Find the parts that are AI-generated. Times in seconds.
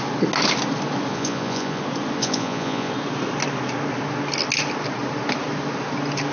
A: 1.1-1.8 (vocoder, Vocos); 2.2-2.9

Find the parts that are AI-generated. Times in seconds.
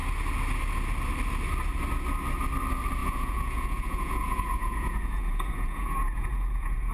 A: 3.0-6.9 (vocoder, Vocos)